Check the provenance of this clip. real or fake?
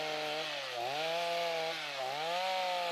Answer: real